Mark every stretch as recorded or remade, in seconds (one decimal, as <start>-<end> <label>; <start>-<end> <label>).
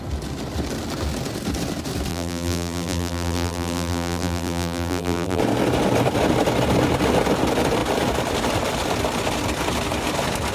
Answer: 0.0-2.1 recorded; 2.1-5.4 remade; 5.4-10.5 recorded